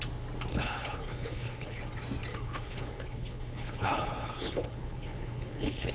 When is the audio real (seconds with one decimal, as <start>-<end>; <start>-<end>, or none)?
0.0-0.5; 1.8-2.3